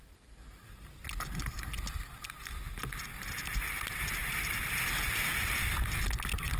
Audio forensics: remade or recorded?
recorded